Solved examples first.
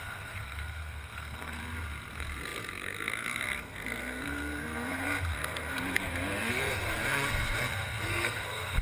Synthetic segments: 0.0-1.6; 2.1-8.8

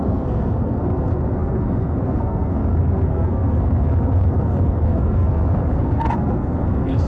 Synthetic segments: 0.0-7.1

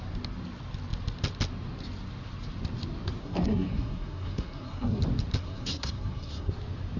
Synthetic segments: 3.2-5.0; 5.4-6.5

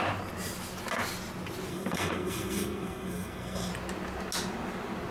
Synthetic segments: 1.7-3.7

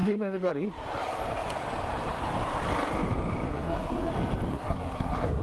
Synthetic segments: 0.0-0.5; 3.5-4.1; 4.5-5.4

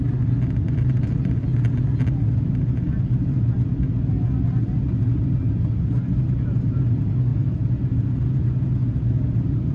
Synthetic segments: none

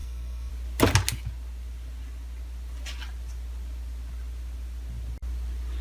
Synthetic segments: 0.0-0.5